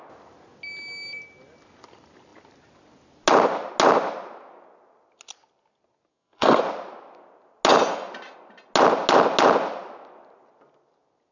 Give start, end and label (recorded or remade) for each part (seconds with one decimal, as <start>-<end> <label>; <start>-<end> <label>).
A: 0.0-6.1 recorded; 6.1-6.6 remade; 6.6-11.3 recorded